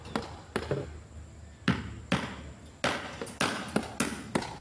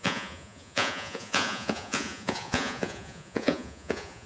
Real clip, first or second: first